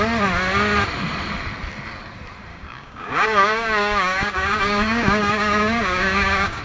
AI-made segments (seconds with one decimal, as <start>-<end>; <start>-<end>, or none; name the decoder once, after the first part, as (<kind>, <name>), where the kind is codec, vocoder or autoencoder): 2.5-6.6 (codec, DAC)